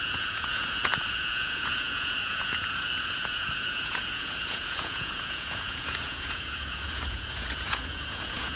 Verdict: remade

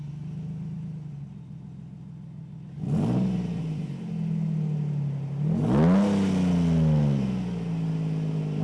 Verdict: recorded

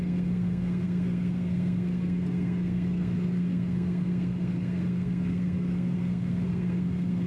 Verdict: remade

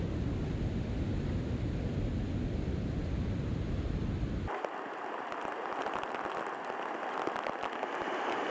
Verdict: recorded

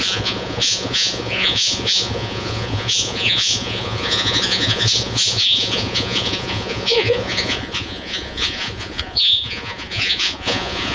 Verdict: remade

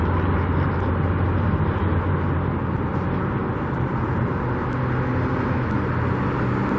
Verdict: recorded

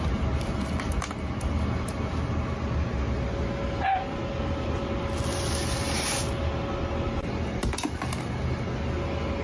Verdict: recorded